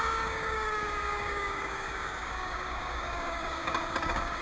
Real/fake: fake